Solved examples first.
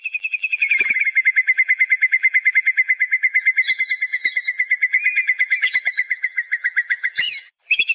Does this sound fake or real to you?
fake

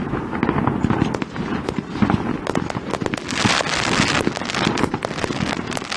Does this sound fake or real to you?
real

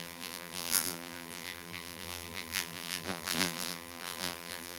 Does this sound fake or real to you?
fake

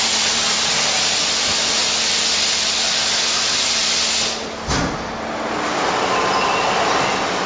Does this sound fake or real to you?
real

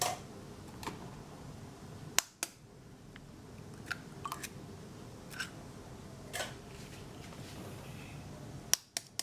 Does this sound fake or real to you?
real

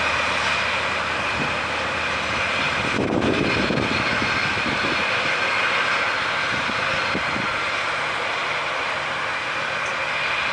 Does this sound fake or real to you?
real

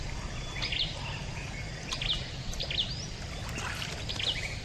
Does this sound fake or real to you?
real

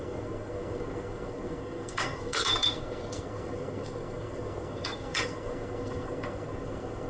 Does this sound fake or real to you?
fake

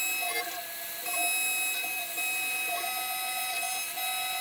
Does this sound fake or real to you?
real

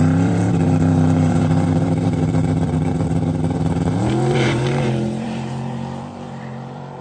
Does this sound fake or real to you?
fake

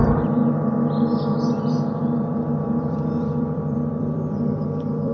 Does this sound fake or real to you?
fake